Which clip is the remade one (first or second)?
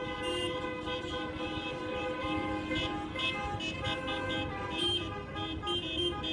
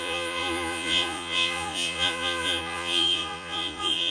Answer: second